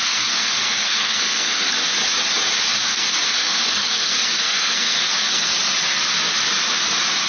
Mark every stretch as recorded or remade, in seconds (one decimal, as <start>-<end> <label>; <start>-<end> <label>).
0.0-1.7 remade; 1.7-2.8 recorded; 2.8-5.5 remade; 5.5-7.3 recorded